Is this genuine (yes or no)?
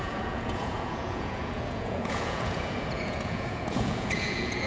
no